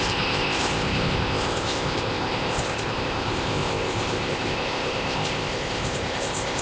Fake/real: fake